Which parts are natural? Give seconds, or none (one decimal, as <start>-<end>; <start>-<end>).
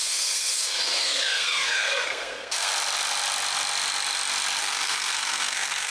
2.7-4.6